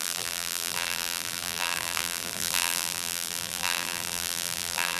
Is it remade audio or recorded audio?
remade